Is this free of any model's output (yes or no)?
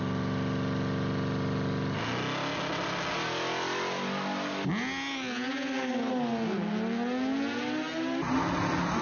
yes